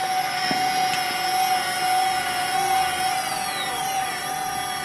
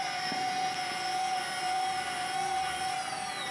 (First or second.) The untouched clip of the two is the first